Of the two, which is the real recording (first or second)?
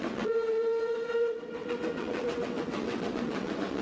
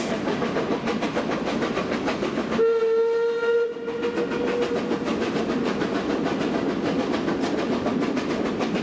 second